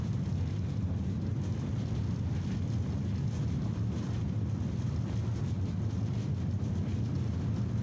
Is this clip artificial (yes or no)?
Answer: no